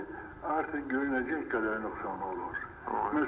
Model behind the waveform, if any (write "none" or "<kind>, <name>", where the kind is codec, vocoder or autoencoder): none